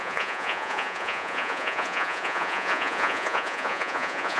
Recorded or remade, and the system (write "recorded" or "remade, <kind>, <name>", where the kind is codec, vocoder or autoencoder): remade, vocoder, Vocos